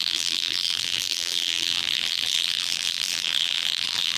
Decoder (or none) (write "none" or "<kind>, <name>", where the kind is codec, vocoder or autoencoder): vocoder, BigVGAN v2